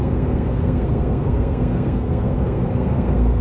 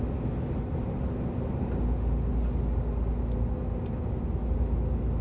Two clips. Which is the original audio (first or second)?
second